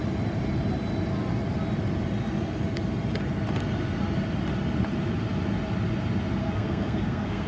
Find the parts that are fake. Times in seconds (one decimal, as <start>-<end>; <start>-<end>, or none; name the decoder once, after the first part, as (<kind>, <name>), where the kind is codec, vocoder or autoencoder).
6.4-7.5 (codec, SNAC)